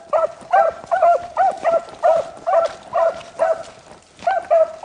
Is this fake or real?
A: real